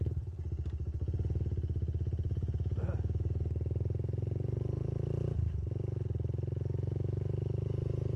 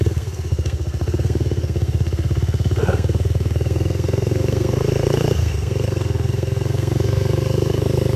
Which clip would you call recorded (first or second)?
first